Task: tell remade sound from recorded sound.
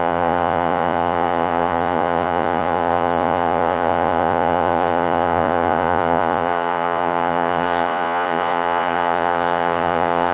remade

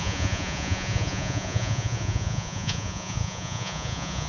remade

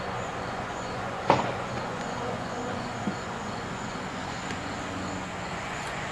remade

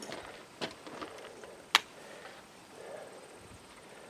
recorded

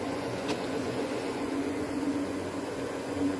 remade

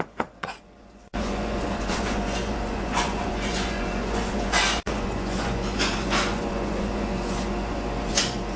remade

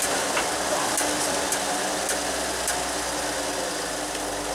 recorded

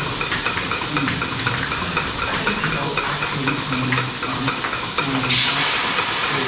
recorded